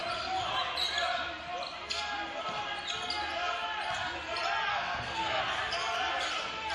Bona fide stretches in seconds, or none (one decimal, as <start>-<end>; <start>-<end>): 0.0-4.7; 5.4-6.7